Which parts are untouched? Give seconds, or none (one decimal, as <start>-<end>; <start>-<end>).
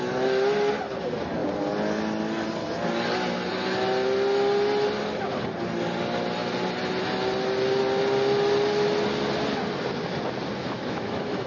0.0-10.6